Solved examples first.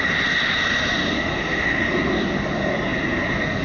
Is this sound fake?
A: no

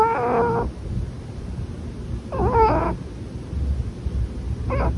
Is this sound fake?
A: no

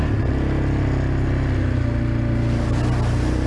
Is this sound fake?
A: no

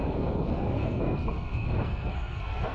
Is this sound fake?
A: yes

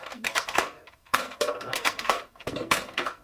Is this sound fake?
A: yes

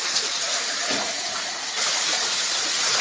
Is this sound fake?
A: yes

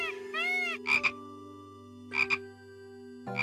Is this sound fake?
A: no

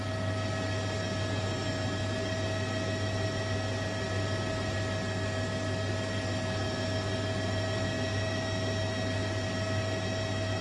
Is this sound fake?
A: no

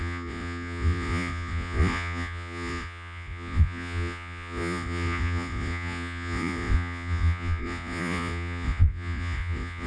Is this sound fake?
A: yes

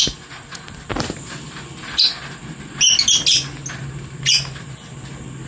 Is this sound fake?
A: no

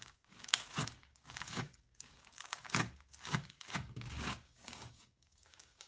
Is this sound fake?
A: yes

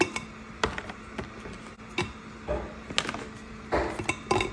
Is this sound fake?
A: no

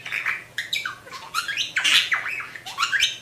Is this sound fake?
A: yes